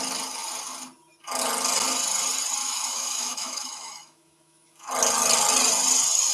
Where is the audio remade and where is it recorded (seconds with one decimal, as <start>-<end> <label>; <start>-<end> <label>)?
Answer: 0.0-2.6 recorded; 2.6-4.9 remade; 4.9-6.3 recorded